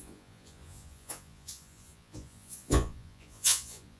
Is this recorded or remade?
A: remade